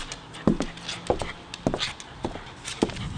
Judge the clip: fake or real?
real